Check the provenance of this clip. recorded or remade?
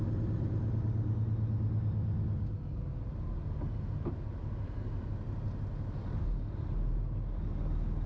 recorded